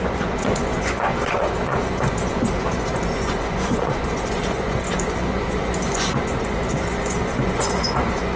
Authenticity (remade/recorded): remade